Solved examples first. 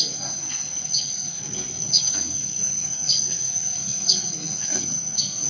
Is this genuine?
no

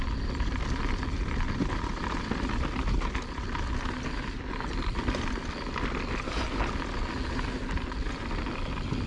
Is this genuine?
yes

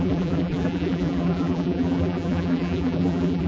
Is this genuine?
no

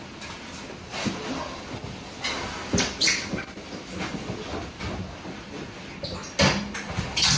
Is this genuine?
yes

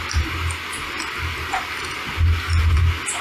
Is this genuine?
yes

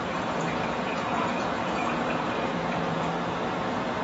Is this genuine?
no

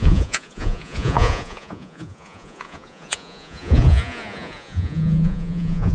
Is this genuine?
no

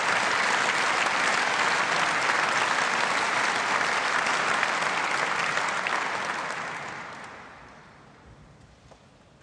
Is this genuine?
yes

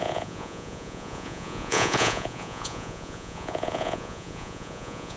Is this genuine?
no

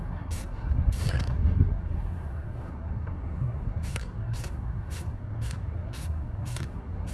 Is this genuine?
no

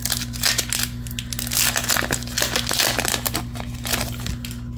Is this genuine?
yes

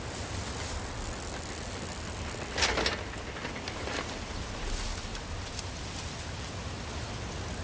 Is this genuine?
yes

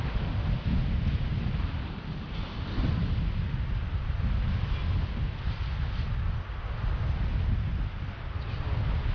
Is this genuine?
yes